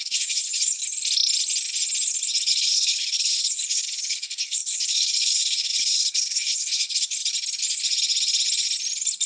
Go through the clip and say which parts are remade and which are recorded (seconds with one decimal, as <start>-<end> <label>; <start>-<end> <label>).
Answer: 0.0-0.8 remade; 0.8-2.5 recorded; 2.5-7.2 remade; 7.2-9.3 recorded